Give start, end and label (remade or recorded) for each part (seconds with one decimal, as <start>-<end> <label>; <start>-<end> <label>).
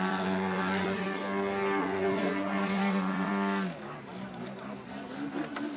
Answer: 0.0-1.2 remade; 1.2-1.8 recorded; 1.8-3.3 remade; 3.3-5.8 recorded